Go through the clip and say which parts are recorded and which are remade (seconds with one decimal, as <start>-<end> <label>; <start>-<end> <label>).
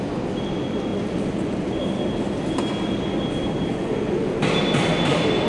0.0-3.7 recorded; 3.7-4.4 remade; 4.4-5.5 recorded